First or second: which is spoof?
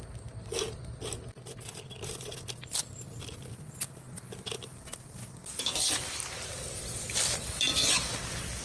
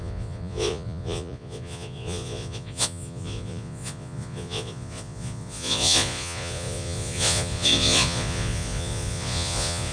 second